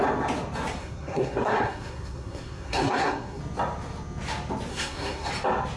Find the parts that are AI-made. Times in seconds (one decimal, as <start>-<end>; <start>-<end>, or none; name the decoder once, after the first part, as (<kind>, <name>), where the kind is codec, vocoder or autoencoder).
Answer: 0.8-3.4 (codec, SNAC); 4.7-5.3